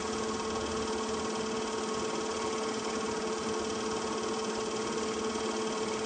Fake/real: real